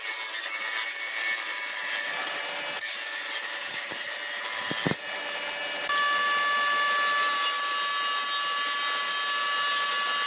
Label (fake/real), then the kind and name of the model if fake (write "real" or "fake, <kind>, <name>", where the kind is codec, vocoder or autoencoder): real